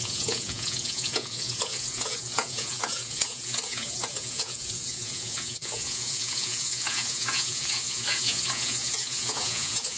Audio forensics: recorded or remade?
remade